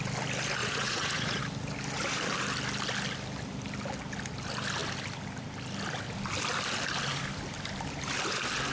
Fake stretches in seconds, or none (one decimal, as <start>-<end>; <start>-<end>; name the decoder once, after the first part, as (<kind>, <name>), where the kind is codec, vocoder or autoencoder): 0.6-1.4 (vocoder, Vocos)